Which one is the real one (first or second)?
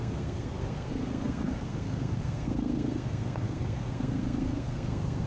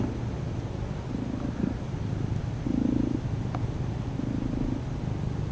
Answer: second